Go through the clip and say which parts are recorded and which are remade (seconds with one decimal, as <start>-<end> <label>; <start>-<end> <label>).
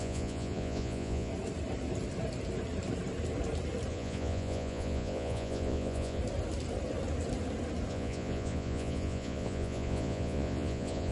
0.0-1.3 remade; 1.3-3.9 recorded; 3.9-6.2 remade; 6.2-7.9 recorded; 7.9-11.1 remade